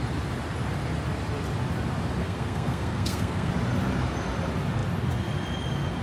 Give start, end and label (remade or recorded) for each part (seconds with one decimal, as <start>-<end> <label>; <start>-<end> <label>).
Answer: 0.0-2.2 recorded; 2.2-3.5 remade; 3.5-6.0 recorded